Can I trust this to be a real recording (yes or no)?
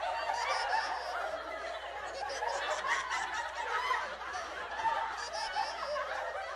yes